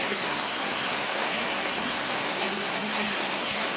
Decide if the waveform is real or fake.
fake